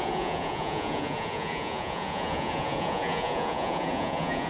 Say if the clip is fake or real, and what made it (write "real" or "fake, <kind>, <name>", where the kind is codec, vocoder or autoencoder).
fake, vocoder, Vocos